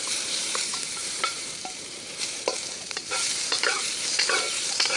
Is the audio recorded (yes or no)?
no